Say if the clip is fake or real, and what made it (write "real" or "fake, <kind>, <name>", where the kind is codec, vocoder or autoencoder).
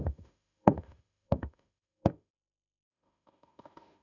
fake, autoencoder, DAC-VAE